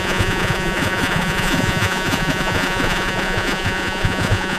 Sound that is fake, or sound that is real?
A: fake